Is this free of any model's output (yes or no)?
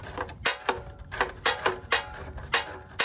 yes